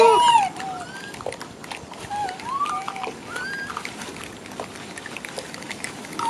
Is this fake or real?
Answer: fake